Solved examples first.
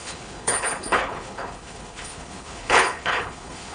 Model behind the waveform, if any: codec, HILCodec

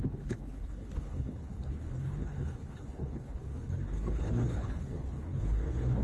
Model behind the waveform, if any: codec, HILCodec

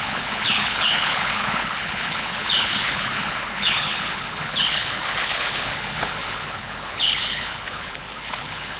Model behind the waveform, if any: codec, HILCodec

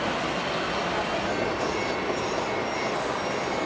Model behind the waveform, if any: none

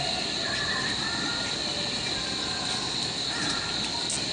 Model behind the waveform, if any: none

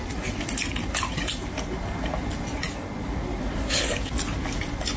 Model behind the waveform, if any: none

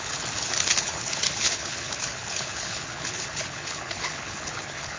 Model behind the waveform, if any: codec, HILCodec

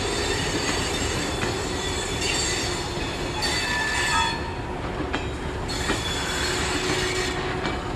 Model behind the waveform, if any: none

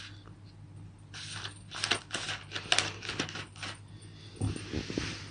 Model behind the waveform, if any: none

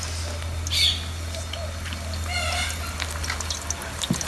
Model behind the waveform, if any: none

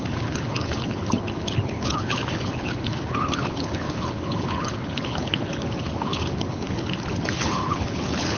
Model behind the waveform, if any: codec, HILCodec